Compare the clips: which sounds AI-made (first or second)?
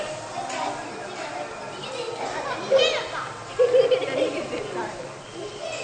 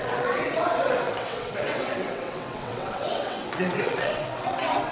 second